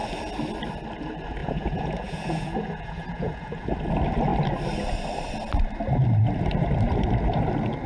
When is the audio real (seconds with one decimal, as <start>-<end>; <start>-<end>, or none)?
0.0-1.4; 3.7-7.9